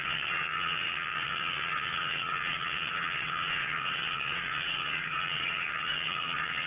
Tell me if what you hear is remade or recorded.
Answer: remade